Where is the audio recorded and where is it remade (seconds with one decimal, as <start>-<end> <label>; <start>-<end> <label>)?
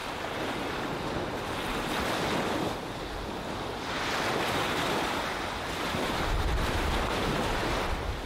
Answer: 0.0-8.3 recorded